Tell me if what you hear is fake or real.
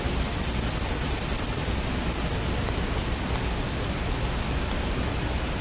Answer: real